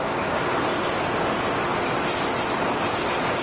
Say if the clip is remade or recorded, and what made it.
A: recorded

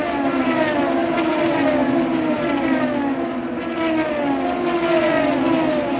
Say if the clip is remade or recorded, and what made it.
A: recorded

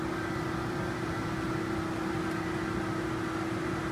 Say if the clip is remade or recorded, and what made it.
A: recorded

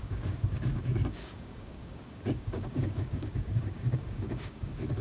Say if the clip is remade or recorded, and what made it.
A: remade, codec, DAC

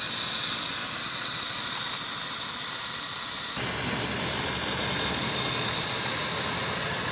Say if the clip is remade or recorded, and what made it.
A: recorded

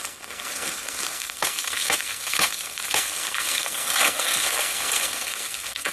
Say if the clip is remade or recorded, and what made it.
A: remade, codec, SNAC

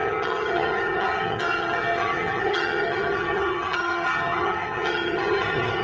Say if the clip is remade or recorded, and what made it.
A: remade, vocoder, HiFi-GAN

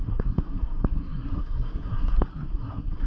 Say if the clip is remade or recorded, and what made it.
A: remade, codec, SNAC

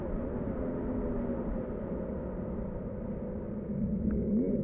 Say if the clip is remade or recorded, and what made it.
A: recorded